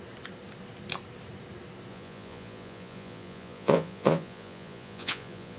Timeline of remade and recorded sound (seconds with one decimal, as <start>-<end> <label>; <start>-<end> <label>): 0.0-1.9 recorded; 1.9-5.6 remade